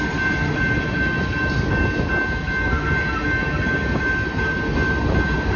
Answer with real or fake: real